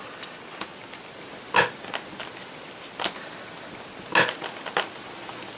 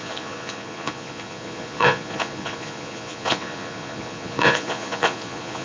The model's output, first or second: second